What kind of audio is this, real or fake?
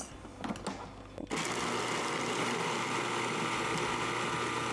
real